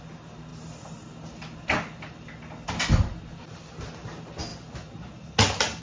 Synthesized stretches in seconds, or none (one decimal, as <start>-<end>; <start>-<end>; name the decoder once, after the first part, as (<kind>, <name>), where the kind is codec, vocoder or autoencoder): none